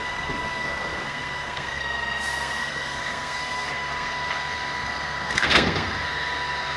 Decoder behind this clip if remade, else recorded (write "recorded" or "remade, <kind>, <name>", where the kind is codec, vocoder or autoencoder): remade, codec, SNAC